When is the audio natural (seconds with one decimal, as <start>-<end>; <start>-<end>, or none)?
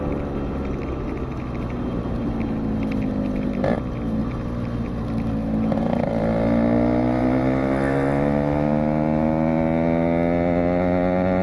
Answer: 0.0-11.4